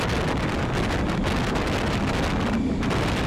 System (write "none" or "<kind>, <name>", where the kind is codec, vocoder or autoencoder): none